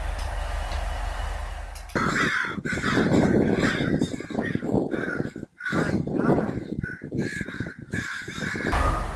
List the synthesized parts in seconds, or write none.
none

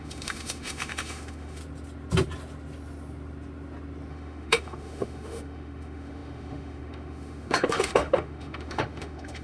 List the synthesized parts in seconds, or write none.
0.0-1.6 (autoencoder, DAC-VAE); 4.1-9.4

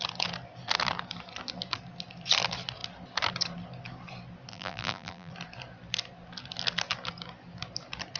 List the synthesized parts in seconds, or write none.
4.5-5.3 (vocoder, BigVGAN v2)

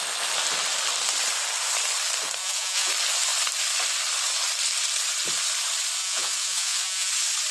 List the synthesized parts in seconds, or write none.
2.4-2.9 (vocoder, Vocos); 6.0-7.1

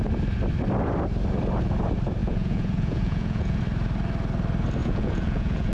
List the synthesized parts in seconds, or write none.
2.2-3.6 (vocoder, Vocos); 4.8-5.7

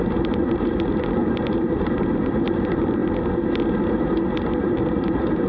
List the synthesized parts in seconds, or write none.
0.0-3.0 (vocoder, BigVGAN v2); 4.5-5.5

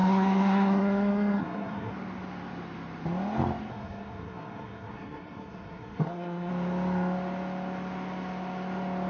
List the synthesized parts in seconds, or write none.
0.0-1.9 (codec, SNAC); 3.7-6.5